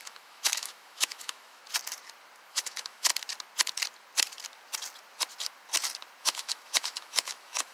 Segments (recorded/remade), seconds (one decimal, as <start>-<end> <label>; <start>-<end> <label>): 0.0-1.6 remade; 1.6-2.5 recorded; 2.5-3.1 remade; 3.1-6.2 recorded; 6.2-7.7 remade